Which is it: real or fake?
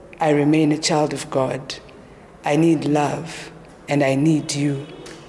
real